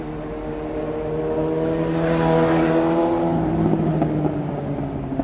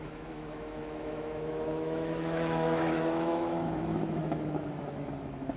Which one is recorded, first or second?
first